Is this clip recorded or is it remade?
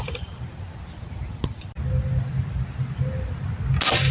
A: recorded